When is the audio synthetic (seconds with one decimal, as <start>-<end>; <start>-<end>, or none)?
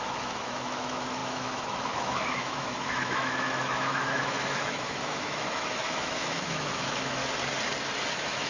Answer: 0.0-7.2; 8.1-8.5